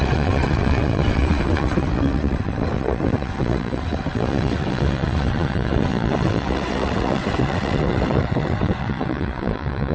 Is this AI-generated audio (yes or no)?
yes